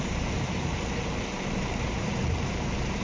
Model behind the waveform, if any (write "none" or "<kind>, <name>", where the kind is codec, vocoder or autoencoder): vocoder, BigVGAN v2